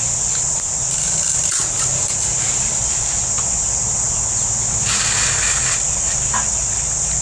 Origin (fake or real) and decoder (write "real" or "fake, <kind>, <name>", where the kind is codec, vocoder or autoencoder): real